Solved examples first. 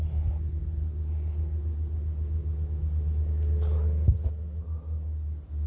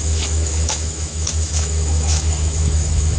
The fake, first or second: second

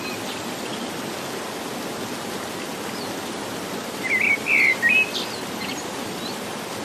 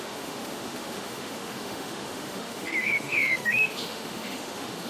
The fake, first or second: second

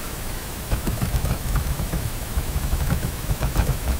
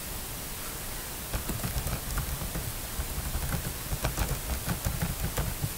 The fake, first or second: first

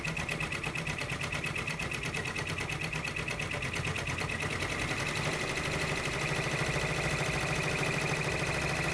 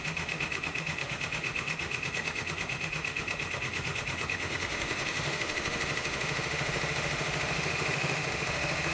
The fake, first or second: second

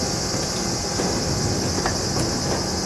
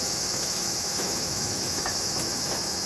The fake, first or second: second